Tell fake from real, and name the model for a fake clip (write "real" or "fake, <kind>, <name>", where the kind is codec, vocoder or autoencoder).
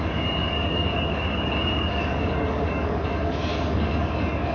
fake, codec, DAC